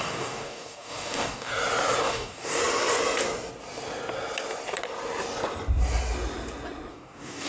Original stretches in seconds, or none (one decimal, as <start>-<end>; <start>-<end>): 1.5-2.0; 2.6-6.9